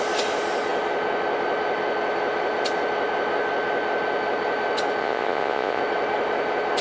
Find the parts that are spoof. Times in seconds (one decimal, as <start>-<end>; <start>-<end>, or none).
5.0-5.8

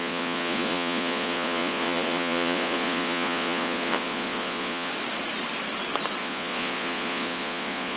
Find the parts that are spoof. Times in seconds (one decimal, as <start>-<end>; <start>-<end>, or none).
0.0-4.9; 6.2-8.0